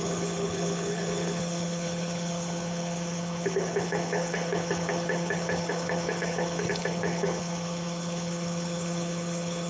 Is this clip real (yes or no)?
no